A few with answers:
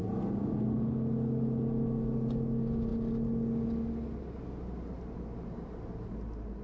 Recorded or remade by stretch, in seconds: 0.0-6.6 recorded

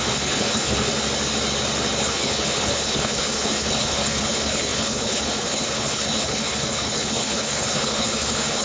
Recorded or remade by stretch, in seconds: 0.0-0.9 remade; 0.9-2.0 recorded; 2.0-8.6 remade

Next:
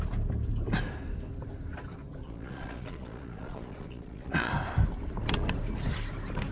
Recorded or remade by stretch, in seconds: 0.0-2.2 recorded; 2.2-4.5 remade; 4.5-6.5 recorded

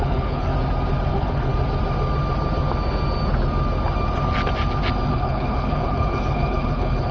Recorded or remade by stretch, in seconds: 0.0-0.5 remade; 0.5-1.1 recorded; 1.1-1.5 remade; 1.5-5.1 recorded; 5.1-7.1 remade